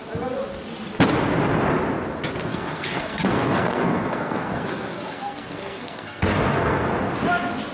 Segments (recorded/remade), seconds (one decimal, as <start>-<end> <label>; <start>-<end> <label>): 0.0-2.5 recorded; 2.5-7.1 remade; 7.1-7.7 recorded